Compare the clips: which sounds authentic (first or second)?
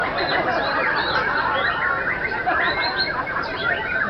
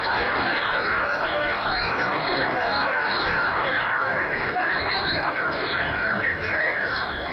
first